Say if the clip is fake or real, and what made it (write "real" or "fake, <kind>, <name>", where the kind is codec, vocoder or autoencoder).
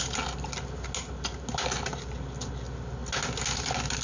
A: real